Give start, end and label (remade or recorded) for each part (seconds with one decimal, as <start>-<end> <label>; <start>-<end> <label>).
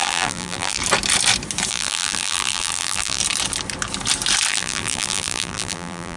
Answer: 0.0-0.8 remade; 0.8-1.7 recorded; 1.7-3.2 remade; 3.2-4.5 recorded; 4.5-6.2 remade